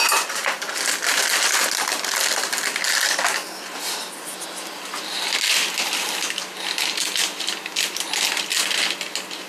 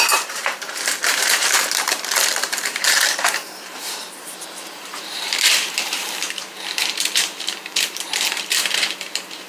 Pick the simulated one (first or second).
second